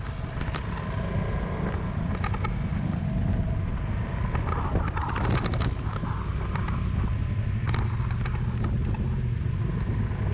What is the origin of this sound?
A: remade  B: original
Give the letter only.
B